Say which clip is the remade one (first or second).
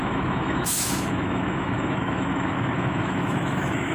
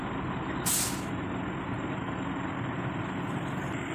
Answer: first